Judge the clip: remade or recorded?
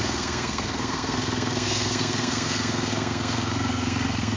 remade